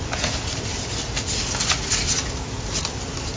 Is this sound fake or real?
real